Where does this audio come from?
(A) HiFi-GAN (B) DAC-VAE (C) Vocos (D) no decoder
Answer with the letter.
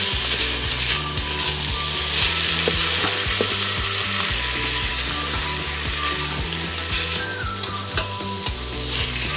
D